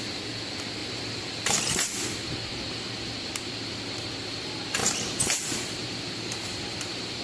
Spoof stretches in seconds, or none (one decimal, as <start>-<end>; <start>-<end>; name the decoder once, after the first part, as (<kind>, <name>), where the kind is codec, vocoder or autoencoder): 0.8-1.7 (vocoder, BigVGAN v2); 4.8-7.2